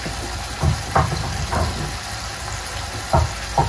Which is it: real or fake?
real